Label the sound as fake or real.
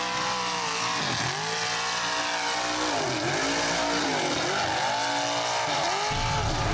real